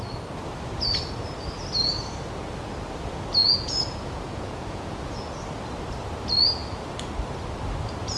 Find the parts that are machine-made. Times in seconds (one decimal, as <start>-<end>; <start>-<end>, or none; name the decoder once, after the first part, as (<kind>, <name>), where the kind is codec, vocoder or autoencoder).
3.4-5.4 (vocoder, Vocos)